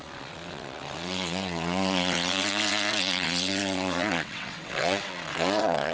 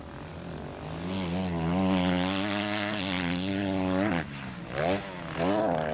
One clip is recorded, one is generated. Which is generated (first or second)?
first